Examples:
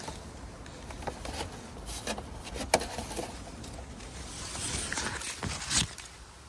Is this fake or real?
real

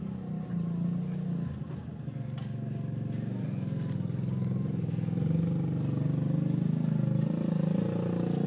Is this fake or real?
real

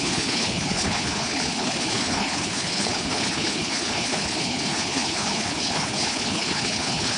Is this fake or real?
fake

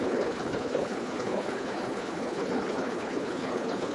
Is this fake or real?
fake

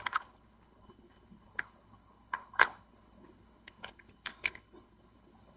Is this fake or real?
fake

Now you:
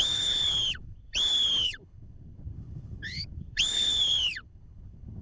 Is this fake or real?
fake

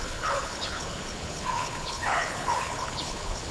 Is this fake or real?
fake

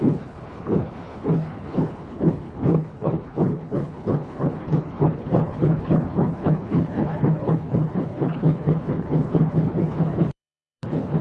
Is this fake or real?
fake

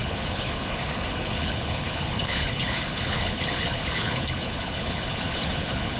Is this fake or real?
fake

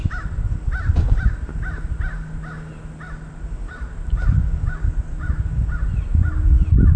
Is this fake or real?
real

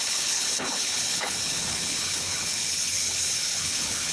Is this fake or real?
fake